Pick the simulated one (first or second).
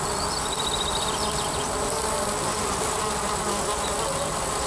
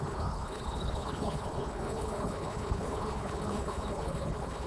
second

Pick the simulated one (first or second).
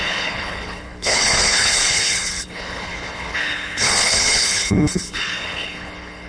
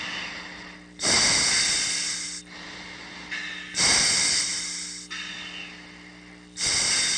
first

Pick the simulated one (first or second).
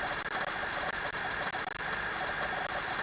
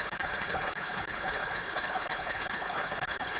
second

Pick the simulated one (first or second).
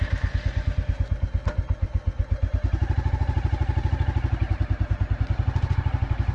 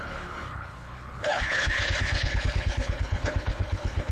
second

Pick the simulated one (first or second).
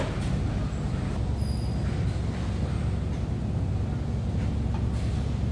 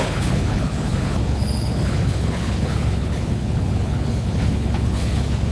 second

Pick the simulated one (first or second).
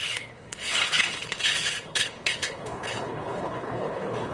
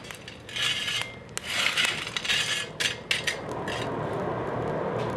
first